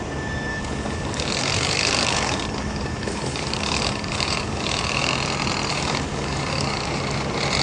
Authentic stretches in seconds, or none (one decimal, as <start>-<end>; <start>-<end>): 0.0-0.5; 5.1-5.7; 7.0-7.6